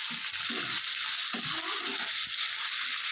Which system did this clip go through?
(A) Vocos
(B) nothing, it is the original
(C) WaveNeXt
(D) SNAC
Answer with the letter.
B